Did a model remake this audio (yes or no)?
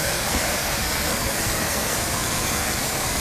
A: yes